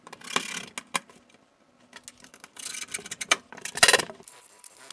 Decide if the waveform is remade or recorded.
recorded